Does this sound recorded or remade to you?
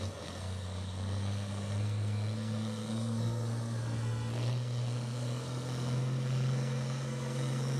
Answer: remade